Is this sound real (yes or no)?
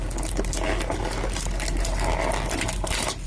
yes